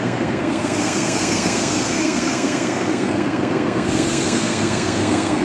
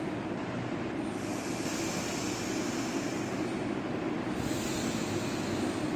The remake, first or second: first